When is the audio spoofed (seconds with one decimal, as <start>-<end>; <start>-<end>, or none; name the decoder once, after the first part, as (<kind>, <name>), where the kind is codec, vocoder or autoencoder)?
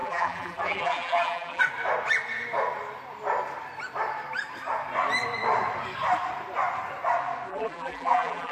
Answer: 0.0-1.6 (vocoder, BigVGAN v2); 7.5-8.5